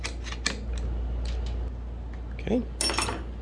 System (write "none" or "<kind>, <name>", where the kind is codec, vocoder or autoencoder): none